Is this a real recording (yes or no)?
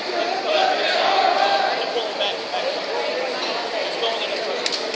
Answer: yes